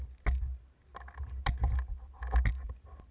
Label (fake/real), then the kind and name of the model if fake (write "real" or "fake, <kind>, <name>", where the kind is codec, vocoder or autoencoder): real